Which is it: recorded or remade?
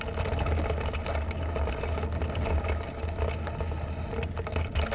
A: recorded